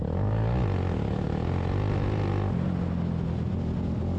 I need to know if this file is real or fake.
real